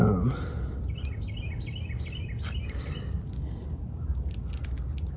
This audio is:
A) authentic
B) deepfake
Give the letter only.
A